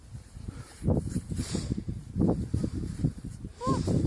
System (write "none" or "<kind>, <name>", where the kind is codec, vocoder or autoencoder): vocoder, BigVGAN v2